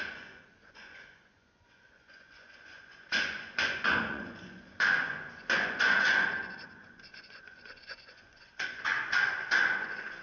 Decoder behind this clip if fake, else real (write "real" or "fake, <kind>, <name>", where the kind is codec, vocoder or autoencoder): fake, vocoder, Vocos